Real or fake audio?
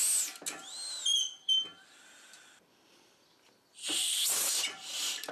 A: real